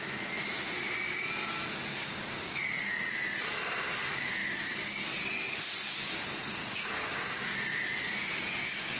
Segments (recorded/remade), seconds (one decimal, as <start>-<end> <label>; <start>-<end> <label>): 0.0-1.9 recorded; 1.9-2.6 remade; 2.6-4.4 recorded; 4.4-5.0 remade; 5.0-6.6 recorded; 6.6-7.4 remade; 7.4-9.0 recorded